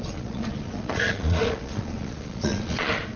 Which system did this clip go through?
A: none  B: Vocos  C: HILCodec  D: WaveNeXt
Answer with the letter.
B